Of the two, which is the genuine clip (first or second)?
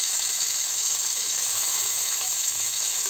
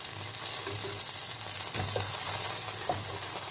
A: second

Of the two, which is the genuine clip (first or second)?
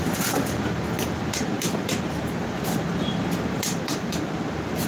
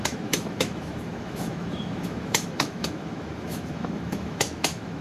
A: first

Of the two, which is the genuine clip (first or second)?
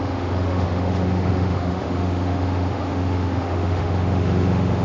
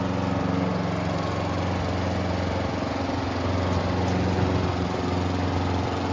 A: second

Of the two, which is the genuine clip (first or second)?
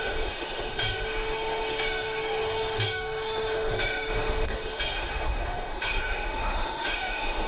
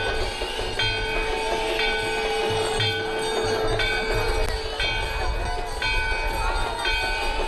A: second